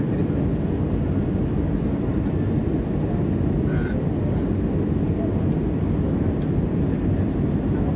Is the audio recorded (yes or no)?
yes